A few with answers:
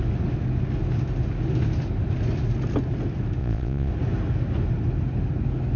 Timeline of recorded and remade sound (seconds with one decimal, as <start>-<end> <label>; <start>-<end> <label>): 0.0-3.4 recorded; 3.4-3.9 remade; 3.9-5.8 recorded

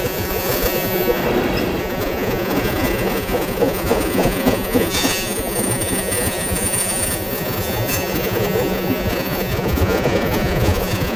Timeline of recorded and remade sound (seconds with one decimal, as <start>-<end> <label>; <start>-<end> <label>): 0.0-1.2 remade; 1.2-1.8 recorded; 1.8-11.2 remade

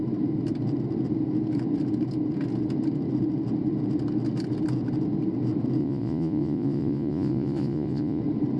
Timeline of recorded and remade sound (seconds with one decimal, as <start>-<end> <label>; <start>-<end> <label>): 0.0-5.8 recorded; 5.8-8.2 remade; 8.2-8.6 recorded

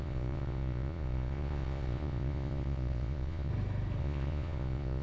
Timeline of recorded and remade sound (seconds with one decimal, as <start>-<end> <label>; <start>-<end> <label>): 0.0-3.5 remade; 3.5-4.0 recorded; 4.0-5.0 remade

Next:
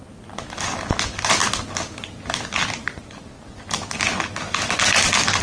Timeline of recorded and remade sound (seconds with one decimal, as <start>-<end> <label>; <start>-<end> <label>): 0.0-5.4 recorded

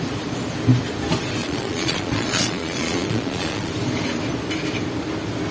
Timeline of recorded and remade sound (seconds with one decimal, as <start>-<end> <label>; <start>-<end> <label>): 0.0-1.4 recorded; 1.4-3.7 remade; 3.7-5.5 recorded